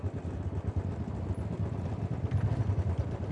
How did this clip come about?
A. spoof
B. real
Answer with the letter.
B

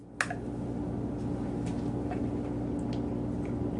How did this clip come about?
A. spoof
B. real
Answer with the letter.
B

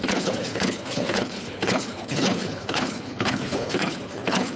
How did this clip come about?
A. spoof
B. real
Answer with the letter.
A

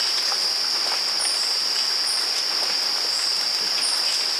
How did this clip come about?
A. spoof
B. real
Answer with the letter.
B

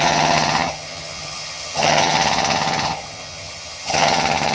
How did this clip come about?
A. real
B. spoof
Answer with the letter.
B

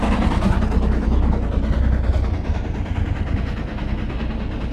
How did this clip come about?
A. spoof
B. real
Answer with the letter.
B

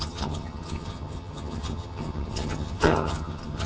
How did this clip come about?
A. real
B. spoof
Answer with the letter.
B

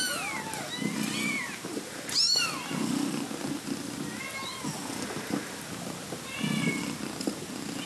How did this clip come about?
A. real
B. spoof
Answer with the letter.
A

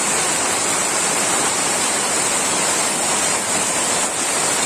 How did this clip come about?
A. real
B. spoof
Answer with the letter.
B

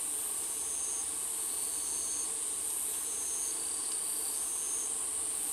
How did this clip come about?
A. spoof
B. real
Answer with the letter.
B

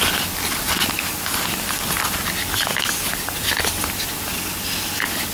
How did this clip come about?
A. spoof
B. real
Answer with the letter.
B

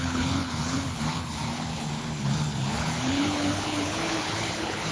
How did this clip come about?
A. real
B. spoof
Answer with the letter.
B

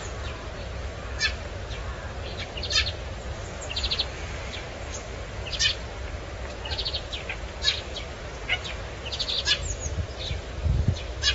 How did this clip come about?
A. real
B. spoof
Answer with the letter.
A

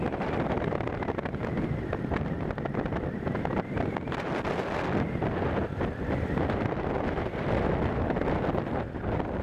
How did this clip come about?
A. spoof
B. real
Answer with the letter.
B